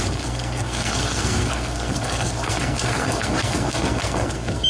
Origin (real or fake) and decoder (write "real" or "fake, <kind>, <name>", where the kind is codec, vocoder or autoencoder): fake, codec, SNAC